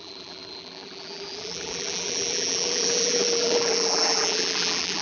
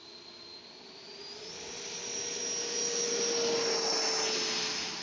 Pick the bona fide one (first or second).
second